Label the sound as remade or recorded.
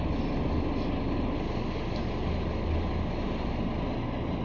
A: recorded